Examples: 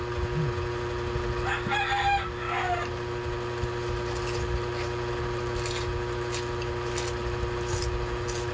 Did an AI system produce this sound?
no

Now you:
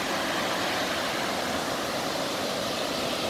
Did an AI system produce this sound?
no